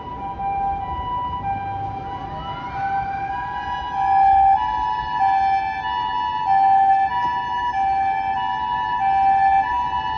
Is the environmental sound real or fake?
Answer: real